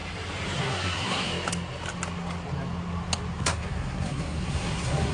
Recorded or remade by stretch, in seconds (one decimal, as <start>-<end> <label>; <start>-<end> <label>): 0.0-0.6 recorded; 0.6-1.3 remade; 1.3-3.4 recorded; 3.4-5.1 remade